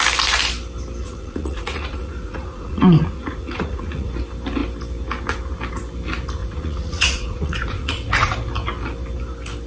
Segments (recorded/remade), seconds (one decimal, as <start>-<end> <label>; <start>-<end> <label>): 0.0-1.0 recorded; 1.0-4.1 remade; 4.1-6.4 recorded; 6.4-8.3 remade; 8.3-9.7 recorded